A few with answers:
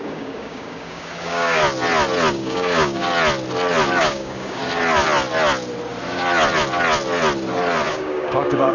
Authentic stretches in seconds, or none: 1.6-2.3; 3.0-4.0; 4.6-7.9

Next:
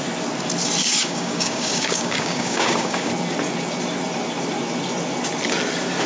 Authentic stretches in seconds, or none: 0.0-0.8; 3.1-6.1

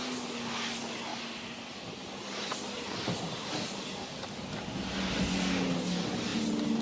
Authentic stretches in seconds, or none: 0.0-6.8

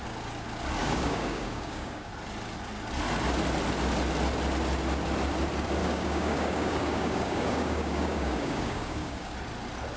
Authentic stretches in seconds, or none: 0.0-0.8; 2.1-5.8; 9.3-10.0

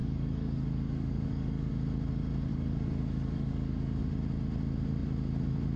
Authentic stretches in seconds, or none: 1.7-2.5; 4.0-5.8

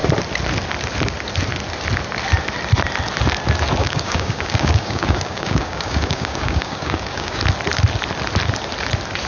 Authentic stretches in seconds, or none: 0.0-3.8; 7.4-9.3

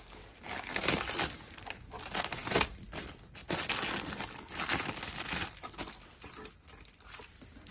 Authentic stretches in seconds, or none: 0.0-7.7